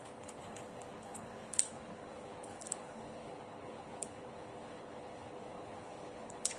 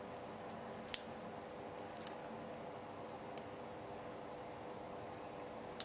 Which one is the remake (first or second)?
first